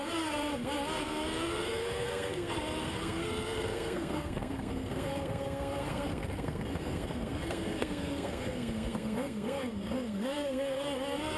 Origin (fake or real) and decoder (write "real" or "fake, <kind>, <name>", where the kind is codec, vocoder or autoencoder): fake, codec, SNAC